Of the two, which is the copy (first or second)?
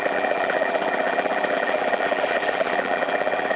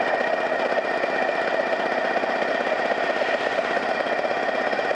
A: first